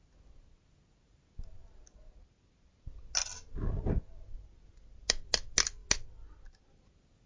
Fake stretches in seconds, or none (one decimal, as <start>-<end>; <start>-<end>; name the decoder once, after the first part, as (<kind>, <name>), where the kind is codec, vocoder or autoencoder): none